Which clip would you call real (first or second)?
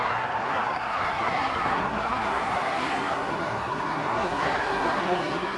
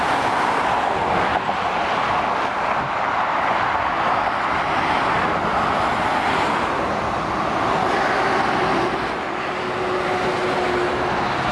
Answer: second